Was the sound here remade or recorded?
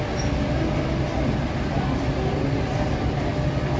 recorded